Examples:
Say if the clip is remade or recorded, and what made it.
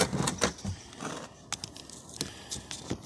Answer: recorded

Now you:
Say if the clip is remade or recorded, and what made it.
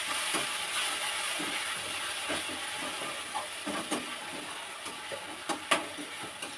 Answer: recorded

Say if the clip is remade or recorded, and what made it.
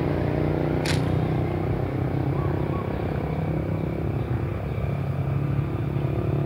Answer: recorded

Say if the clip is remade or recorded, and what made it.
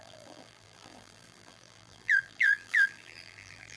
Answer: remade, vocoder, BigVGAN v2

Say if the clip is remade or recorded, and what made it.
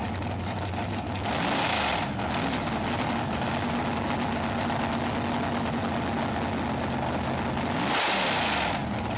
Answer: recorded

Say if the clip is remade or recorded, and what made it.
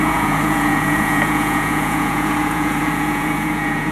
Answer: remade, vocoder, Vocos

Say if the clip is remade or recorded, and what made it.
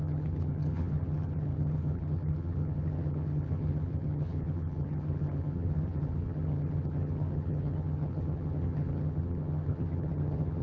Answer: remade, vocoder, HiFi-GAN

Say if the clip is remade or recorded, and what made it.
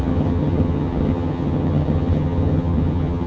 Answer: remade, vocoder, HiFi-GAN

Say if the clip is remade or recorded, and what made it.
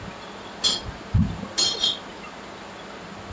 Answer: recorded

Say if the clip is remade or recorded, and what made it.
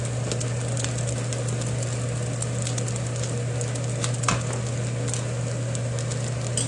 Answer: recorded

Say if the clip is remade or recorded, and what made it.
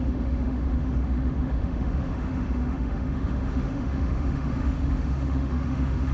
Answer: remade, autoencoder, DAC-VAE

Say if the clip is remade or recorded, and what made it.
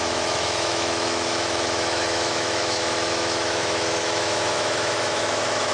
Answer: remade, autoencoder, DAC-VAE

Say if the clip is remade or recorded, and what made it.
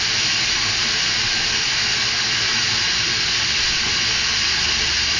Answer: recorded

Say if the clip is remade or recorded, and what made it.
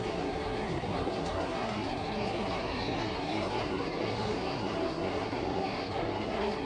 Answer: remade, codec, SNAC